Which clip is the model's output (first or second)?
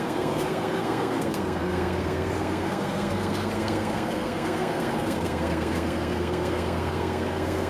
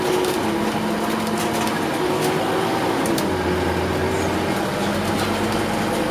first